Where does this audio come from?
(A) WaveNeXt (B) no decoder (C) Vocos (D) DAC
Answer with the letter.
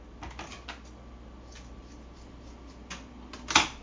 B